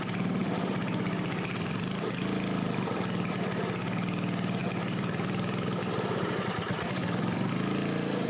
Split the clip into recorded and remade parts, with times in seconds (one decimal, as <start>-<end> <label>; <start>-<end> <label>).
0.0-0.4 recorded; 0.4-2.2 remade; 2.2-4.6 recorded; 4.6-7.5 remade; 7.5-8.3 recorded